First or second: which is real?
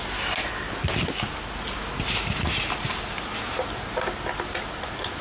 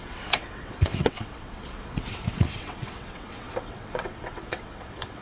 first